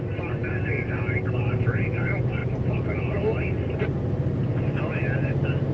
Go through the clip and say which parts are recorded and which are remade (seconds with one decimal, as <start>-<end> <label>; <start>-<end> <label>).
0.0-5.7 recorded